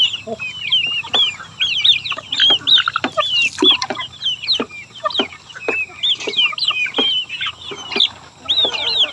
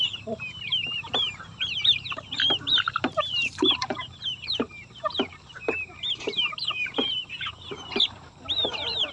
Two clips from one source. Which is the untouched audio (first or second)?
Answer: first